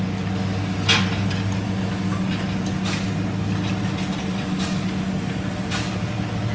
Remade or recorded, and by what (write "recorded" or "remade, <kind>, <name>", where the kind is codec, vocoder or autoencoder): recorded